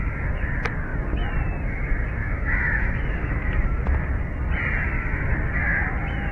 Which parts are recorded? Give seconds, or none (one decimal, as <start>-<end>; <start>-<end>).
0.0-2.2; 3.3-6.3